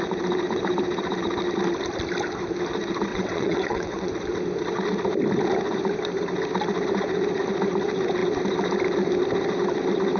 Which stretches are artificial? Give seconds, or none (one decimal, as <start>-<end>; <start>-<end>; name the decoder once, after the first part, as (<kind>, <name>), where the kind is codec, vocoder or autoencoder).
3.1-4.1 (vocoder, WaveNeXt)